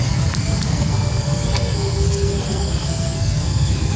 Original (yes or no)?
no